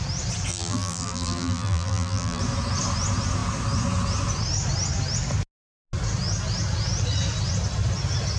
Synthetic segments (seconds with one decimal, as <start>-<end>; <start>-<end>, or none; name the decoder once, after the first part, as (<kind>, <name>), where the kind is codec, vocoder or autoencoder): 0.5-2.4 (vocoder, BigVGAN v2)